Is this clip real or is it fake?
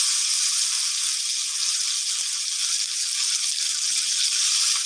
real